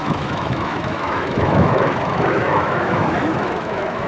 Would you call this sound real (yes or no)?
no